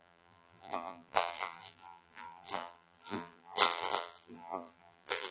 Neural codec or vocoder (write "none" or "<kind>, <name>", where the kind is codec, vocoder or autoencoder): vocoder, BigVGAN v2